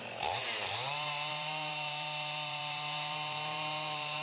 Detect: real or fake fake